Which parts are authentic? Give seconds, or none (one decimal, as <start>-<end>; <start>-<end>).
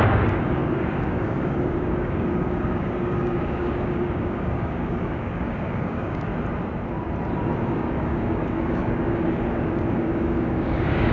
6.3-7.6